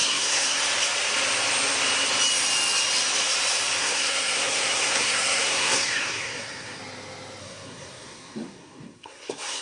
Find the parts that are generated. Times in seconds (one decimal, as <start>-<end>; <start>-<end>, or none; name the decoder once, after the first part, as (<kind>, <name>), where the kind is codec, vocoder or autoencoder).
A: 0.0-0.6 (codec, SNAC); 3.8-6.8; 7.4-9.6